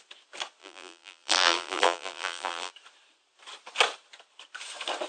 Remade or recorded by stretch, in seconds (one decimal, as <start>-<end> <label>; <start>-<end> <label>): 0.0-0.6 recorded; 0.6-2.7 remade; 2.7-5.1 recorded